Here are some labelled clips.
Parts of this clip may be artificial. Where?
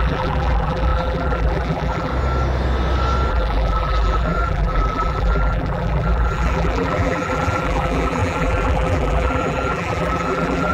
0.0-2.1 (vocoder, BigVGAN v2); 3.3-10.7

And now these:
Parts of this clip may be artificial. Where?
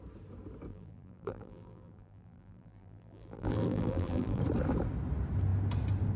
0.7-4.4 (vocoder, BigVGAN v2)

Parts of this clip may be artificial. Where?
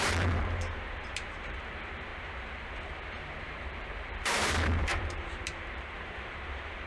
0.0-2.1 (vocoder, BigVGAN v2); 3.4-6.9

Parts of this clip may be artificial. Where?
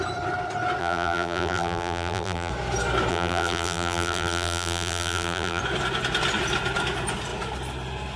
0.8-2.5 (vocoder, BigVGAN v2); 3.1-5.6